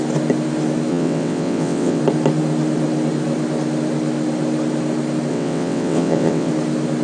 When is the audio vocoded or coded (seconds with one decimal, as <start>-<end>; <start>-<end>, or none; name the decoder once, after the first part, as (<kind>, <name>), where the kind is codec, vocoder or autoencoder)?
0.9-2.0 (vocoder, WaveNeXt); 5.3-6.5

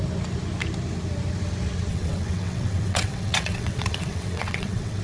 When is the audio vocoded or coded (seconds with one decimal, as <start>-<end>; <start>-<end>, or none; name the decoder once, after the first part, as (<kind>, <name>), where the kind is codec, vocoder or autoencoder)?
1.9-5.0 (vocoder, WaveNeXt)

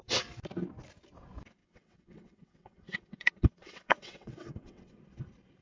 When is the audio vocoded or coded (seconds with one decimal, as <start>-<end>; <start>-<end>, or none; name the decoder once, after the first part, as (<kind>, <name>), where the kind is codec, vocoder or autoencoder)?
1.6-5.0 (vocoder, WaveNeXt)

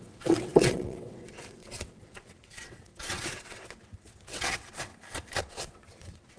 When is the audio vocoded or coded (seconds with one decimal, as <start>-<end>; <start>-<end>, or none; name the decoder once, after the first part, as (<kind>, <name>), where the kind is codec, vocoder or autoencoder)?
0.0-4.9 (vocoder, WaveNeXt); 5.4-6.4

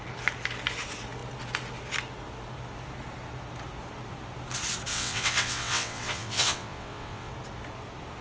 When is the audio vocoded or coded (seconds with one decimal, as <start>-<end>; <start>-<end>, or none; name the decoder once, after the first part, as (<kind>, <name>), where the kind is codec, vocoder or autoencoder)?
4.9-7.3 (vocoder, WaveNeXt)

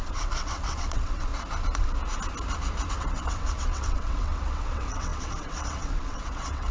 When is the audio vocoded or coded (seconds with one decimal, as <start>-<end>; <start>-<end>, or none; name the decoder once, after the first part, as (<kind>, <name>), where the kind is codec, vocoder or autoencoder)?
0.0-1.3 (vocoder, WaveNeXt); 2.9-6.7